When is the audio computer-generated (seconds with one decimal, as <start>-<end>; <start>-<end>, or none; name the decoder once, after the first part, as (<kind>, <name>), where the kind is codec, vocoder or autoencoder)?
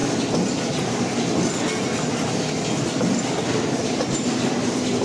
none